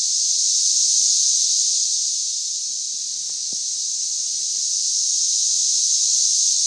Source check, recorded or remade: recorded